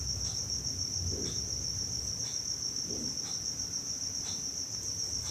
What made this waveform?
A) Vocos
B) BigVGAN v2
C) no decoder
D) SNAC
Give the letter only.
C